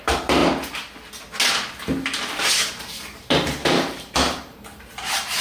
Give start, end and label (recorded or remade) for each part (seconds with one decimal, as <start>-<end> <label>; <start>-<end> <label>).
0.0-0.4 remade; 0.4-2.3 recorded; 2.3-5.4 remade